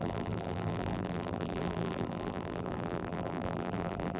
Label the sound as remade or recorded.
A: remade